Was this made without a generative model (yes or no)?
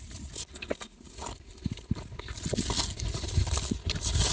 yes